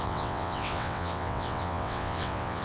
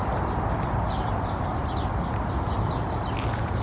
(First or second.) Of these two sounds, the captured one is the second